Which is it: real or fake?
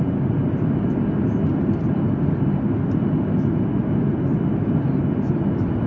real